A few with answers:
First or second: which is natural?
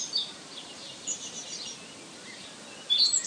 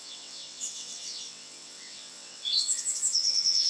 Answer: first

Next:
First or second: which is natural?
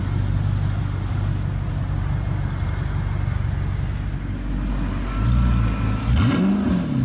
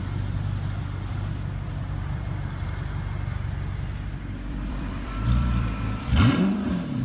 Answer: first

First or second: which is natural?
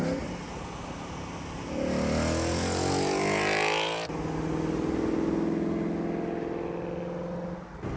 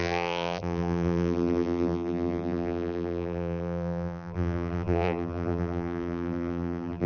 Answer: first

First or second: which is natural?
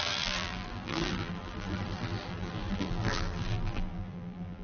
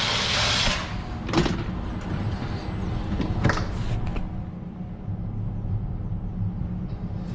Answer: second